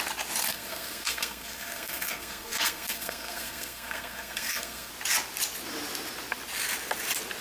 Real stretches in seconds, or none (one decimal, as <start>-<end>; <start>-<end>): 0.0-0.5; 4.9-7.4